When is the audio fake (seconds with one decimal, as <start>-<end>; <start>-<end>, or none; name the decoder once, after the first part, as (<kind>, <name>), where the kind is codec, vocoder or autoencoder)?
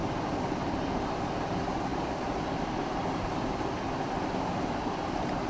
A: 0.0-0.8 (vocoder, BigVGAN v2); 1.9-5.5